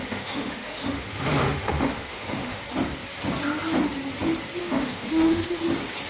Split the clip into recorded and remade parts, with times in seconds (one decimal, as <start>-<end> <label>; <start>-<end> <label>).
0.0-2.6 remade; 2.6-4.6 recorded; 4.6-5.6 remade; 5.6-6.1 recorded